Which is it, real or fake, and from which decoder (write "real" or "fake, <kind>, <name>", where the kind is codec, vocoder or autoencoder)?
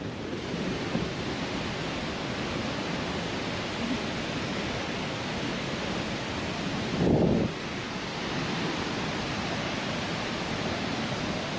real